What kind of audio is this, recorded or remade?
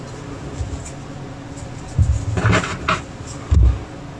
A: recorded